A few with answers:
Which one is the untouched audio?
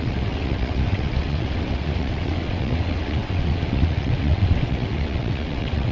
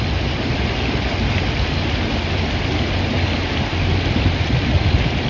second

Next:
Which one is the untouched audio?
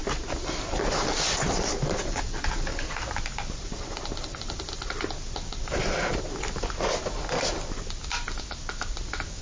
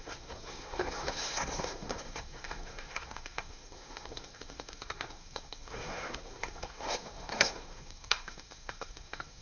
first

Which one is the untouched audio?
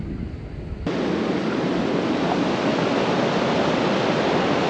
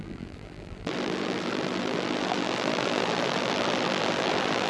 first